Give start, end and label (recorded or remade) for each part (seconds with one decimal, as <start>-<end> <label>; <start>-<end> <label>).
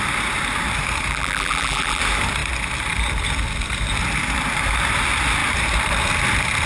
0.0-1.1 recorded; 1.1-2.0 remade; 2.0-6.7 recorded